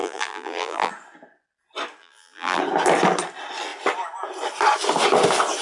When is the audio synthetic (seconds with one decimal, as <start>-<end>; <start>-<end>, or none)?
0.0-0.9; 2.0-2.6